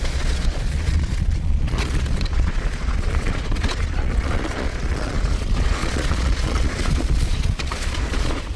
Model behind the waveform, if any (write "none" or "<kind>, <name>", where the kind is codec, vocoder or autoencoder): vocoder, Vocos